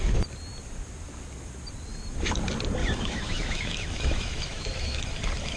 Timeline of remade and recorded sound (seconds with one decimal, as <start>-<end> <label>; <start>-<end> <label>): 0.0-2.8 recorded; 2.8-5.0 remade; 5.0-5.6 recorded